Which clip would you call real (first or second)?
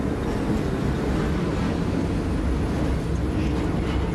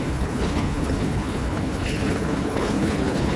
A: first